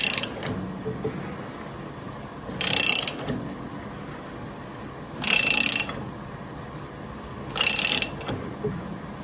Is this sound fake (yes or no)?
no